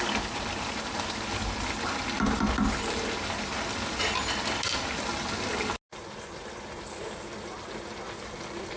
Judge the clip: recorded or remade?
recorded